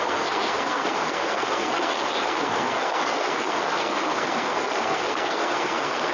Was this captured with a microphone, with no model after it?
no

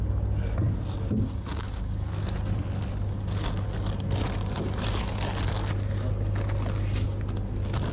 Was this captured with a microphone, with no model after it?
yes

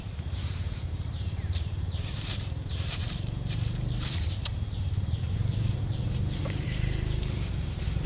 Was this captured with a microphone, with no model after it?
no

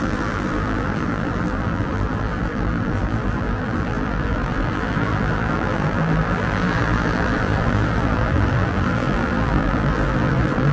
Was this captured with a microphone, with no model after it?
no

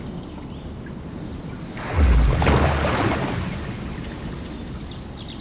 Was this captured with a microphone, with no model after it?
yes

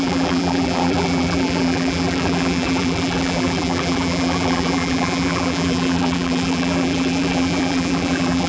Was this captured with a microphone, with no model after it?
no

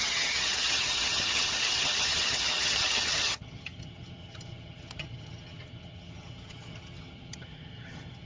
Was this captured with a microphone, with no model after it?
no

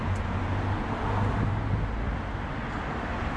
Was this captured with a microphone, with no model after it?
yes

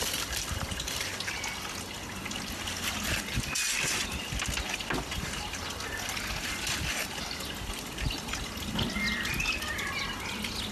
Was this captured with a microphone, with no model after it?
yes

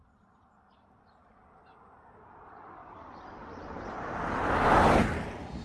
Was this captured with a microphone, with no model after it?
yes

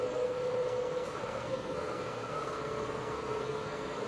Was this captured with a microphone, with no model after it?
no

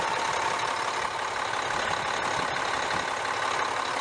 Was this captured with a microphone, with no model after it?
yes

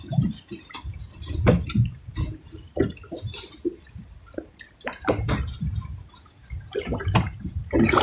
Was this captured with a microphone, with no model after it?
no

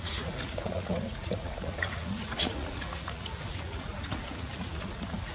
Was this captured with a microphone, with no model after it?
no